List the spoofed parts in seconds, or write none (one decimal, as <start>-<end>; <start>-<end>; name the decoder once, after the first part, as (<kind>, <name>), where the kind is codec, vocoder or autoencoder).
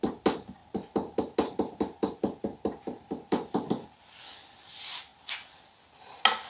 none